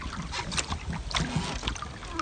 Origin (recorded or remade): recorded